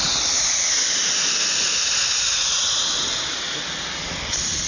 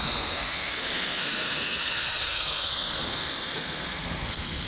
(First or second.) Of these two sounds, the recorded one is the first